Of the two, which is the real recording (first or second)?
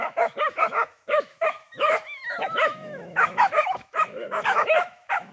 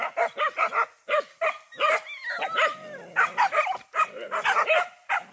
second